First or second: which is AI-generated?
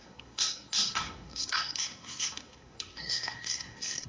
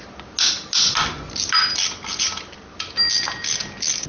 first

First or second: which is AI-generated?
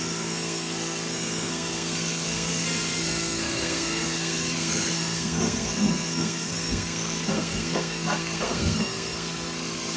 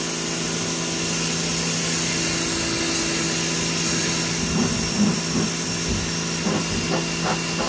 first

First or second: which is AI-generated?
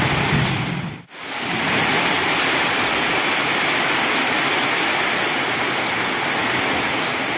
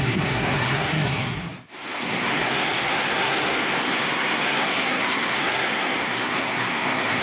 second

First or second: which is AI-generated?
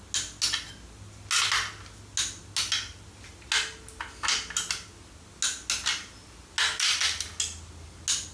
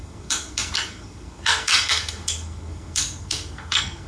second